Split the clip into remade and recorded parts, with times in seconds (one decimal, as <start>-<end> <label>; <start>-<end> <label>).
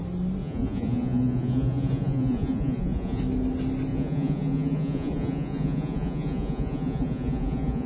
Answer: 0.0-0.4 recorded; 0.4-3.2 remade; 3.2-3.9 recorded; 3.9-7.9 remade